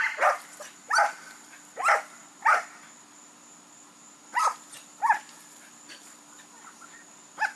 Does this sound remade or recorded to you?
recorded